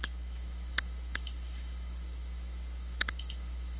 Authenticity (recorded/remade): remade